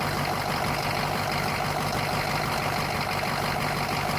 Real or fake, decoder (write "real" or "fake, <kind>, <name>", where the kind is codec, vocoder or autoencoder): real